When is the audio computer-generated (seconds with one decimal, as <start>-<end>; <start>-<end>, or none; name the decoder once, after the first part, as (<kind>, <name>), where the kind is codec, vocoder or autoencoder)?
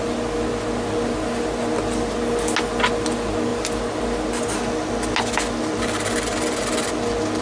none